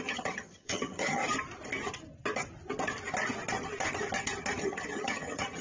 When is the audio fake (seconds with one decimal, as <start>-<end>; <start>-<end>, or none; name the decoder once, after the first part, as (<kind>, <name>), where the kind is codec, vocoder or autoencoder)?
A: 0.0-1.2 (vocoder, HiFi-GAN); 4.6-5.6